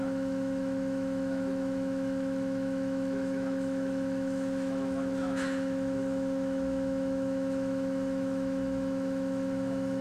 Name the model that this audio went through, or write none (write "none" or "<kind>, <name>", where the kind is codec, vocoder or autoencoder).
autoencoder, DAC-VAE